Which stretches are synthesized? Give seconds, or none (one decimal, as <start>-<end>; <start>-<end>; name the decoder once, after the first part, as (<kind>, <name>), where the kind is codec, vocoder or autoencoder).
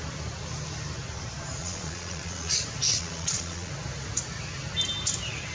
1.6-2.5 (vocoder, Vocos); 2.9-3.7